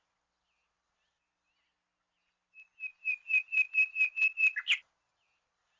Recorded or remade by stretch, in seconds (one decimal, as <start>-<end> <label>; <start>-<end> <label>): 0.0-5.8 recorded